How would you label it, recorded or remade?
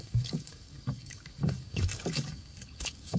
remade